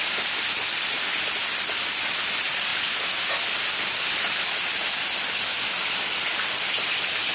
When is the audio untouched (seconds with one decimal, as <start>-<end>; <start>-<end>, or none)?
0.0-2.7; 3.3-4.7